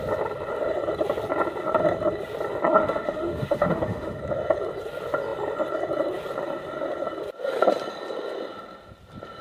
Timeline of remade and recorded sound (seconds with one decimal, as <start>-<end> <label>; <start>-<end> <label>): 0.0-2.8 recorded; 2.8-4.2 remade; 4.2-9.4 recorded

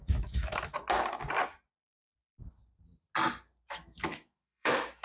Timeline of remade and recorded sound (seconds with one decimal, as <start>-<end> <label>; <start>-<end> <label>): 0.0-0.8 remade; 0.8-3.8 recorded; 3.8-5.0 remade

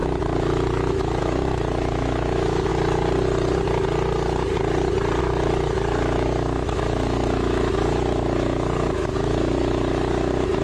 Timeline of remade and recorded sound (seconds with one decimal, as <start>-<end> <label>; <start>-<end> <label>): 0.0-2.7 remade; 2.7-5.2 recorded; 5.2-10.6 remade

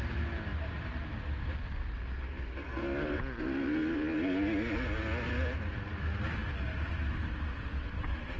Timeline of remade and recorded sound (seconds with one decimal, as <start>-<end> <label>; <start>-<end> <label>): 0.0-8.4 recorded

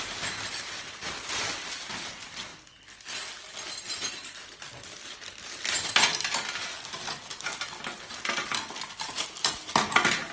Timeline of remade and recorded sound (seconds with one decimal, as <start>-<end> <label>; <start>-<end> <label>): 0.0-10.3 recorded